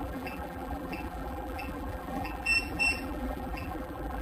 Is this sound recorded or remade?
remade